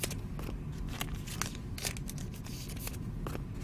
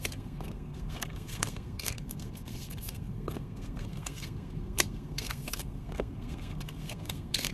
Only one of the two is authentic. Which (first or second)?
first